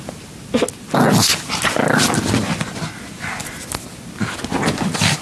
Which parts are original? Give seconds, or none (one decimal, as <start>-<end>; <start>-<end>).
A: 0.0-5.2